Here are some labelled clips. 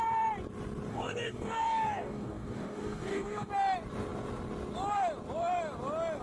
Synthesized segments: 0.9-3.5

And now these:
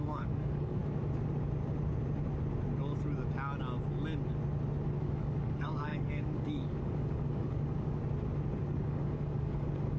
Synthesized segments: 0.0-0.8; 5.0-8.0; 8.6-10.0

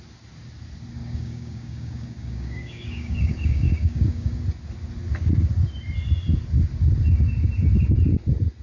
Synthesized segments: 1.0-4.4

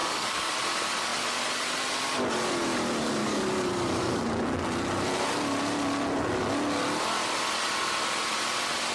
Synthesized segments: 0.0-0.6; 3.2-4.2